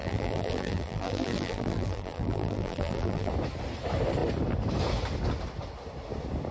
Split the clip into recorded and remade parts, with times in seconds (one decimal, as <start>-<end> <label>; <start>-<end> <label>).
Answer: 0.0-3.3 remade; 3.3-6.5 recorded